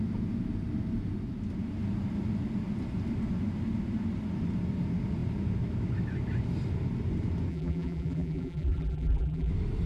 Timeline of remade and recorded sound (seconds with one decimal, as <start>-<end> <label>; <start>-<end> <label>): 0.0-7.5 recorded; 7.5-9.5 remade; 9.5-9.9 recorded

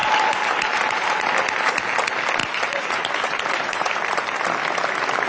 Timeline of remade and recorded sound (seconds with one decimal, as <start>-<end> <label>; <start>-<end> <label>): 0.0-1.3 remade; 1.3-2.4 recorded; 2.4-4.4 remade; 4.4-5.3 recorded